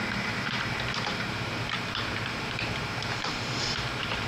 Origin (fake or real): fake